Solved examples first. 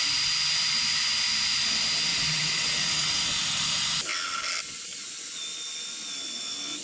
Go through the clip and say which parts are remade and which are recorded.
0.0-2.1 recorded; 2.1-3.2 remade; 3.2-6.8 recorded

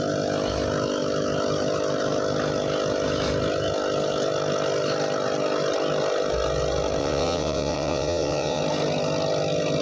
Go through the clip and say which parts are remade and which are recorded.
0.0-7.0 recorded; 7.0-8.6 remade; 8.6-9.8 recorded

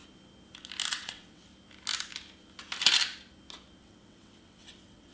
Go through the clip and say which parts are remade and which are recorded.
0.0-0.9 recorded; 0.9-1.5 remade; 1.5-3.8 recorded; 3.8-5.1 remade